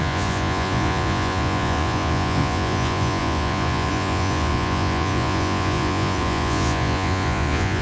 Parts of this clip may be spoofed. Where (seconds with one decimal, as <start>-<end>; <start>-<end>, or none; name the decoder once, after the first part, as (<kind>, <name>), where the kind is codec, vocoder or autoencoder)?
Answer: 0.0-7.8 (vocoder, Vocos)